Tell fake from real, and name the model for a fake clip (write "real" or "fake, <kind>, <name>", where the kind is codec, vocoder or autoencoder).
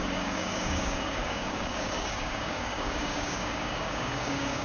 fake, codec, DAC